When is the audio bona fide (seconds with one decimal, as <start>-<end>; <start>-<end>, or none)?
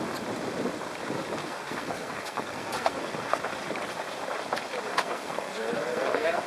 0.0-1.4; 3.4-4.9